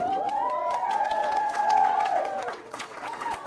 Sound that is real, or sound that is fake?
fake